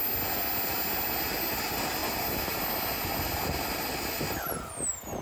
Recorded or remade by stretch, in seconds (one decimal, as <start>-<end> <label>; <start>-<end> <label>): 0.0-5.2 recorded